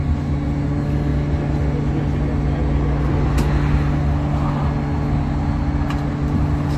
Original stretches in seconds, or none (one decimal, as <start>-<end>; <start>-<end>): 0.0-6.8